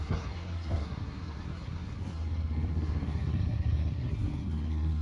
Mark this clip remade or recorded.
remade